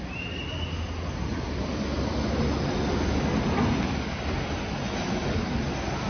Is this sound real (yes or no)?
yes